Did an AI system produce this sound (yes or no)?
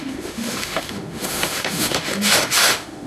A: yes